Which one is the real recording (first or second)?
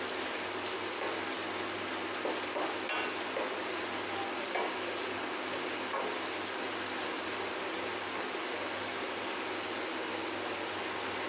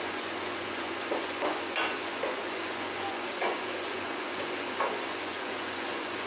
first